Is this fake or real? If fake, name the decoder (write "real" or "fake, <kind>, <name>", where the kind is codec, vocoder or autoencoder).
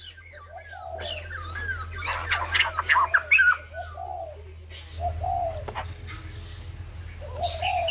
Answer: real